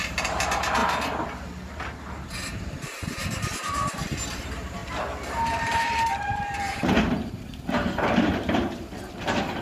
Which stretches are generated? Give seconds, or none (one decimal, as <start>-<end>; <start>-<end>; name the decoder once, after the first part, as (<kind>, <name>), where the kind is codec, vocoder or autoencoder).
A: 0.0-0.8 (vocoder, BigVGAN v2); 2.5-9.6